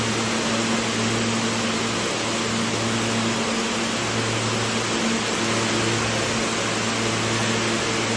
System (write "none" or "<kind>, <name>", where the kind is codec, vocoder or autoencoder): none